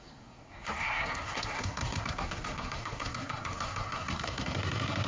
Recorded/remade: remade